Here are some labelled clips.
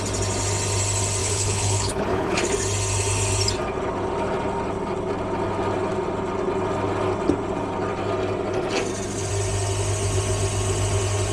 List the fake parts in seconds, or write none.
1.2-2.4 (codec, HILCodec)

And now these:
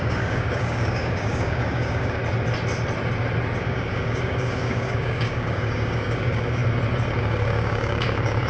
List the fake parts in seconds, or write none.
0.0-2.2 (codec, DAC); 3.6-6.6; 7.2-8.5